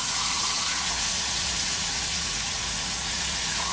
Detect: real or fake fake